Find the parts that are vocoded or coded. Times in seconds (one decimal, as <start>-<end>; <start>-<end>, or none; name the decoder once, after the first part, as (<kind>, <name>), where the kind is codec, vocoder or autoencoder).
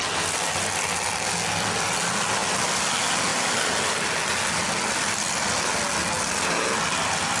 none